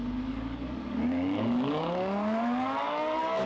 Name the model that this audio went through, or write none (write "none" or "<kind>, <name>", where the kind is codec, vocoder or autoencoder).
codec, DAC